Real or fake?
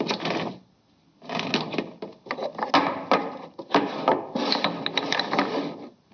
real